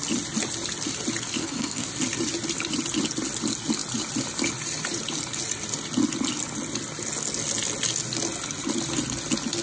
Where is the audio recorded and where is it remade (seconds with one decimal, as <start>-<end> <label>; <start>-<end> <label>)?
0.0-1.4 recorded; 1.4-1.9 remade; 1.9-9.6 recorded